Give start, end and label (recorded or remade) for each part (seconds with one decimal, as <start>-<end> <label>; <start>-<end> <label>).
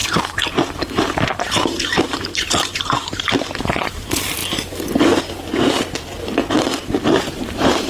0.0-4.4 remade; 4.4-6.5 recorded; 6.5-7.9 remade